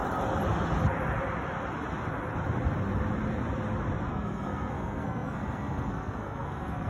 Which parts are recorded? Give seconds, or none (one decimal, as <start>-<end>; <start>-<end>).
0.0-4.1

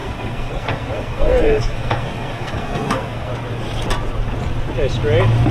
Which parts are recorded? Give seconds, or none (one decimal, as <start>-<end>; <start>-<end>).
3.3-5.5

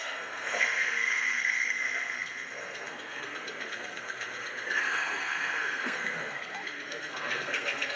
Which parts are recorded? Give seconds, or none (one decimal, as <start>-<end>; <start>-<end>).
none

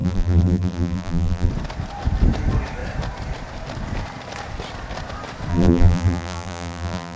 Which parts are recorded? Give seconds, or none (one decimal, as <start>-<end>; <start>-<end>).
1.5-5.5

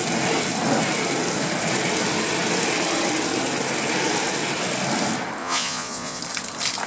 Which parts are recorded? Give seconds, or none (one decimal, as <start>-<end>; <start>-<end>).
0.0-5.4; 6.2-6.9